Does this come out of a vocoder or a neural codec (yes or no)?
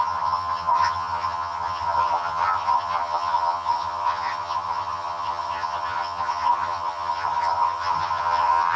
yes